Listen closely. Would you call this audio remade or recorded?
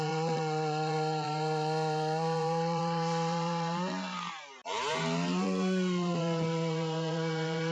remade